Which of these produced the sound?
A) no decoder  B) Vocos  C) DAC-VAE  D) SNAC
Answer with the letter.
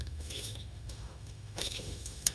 C